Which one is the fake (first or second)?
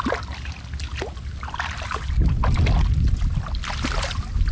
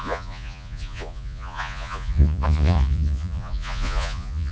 second